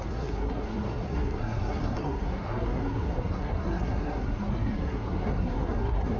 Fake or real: fake